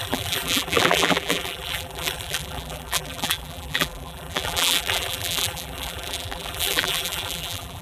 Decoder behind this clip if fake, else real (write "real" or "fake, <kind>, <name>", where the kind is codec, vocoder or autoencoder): fake, vocoder, BigVGAN v2